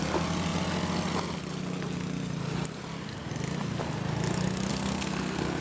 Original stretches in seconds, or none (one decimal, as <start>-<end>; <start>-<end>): 0.0-4.7